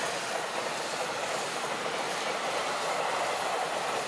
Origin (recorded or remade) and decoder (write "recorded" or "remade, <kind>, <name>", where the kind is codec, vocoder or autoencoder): recorded